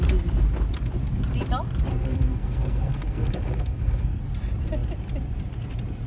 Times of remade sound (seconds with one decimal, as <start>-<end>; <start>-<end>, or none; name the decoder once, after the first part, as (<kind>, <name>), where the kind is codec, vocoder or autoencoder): 1.9-4.2 (codec, SNAC)